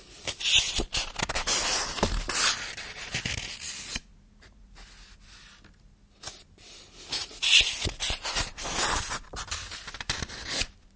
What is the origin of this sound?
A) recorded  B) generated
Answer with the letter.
A